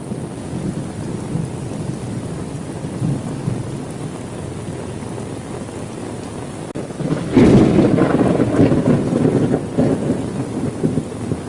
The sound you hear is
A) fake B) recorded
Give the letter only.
B